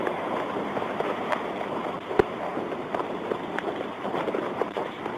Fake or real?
fake